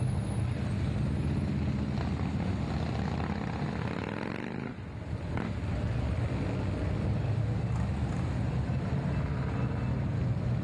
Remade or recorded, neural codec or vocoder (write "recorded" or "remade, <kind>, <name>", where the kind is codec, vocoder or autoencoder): recorded